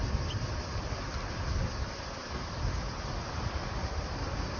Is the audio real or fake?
real